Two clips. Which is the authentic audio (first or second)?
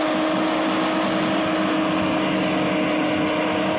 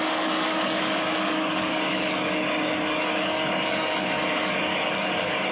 first